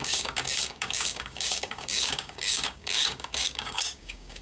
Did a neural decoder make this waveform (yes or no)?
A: yes